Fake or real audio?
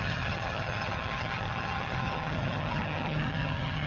fake